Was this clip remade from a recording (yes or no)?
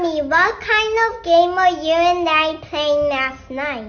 no